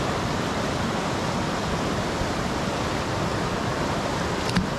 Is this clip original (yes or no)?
no